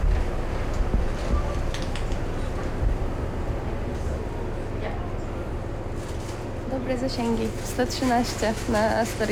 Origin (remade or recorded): recorded